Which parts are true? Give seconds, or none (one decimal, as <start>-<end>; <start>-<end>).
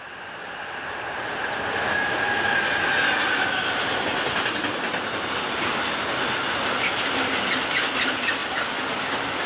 0.0-9.5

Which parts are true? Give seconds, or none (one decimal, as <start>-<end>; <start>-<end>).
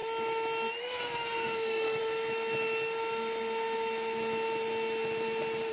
0.0-0.8; 2.0-5.7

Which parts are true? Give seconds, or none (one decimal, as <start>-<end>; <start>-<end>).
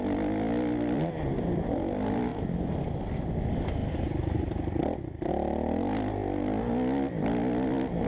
0.0-3.8; 5.3-8.1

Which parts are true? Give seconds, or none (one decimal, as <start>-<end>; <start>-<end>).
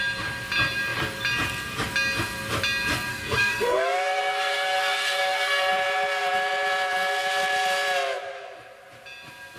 0.0-3.1; 5.7-9.6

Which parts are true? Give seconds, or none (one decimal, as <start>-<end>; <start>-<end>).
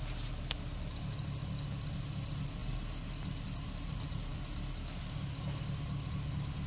0.0-6.7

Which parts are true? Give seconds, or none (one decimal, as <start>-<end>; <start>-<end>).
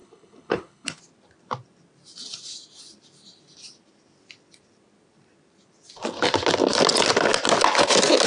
1.0-8.3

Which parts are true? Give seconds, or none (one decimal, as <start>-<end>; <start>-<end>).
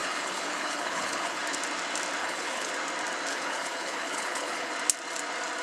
1.4-2.2; 2.7-3.3; 4.7-5.6